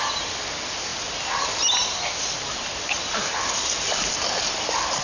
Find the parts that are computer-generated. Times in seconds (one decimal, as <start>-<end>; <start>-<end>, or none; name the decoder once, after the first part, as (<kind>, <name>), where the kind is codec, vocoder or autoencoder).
none